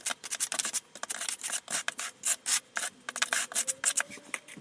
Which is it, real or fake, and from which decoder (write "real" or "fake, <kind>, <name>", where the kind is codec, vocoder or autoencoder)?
real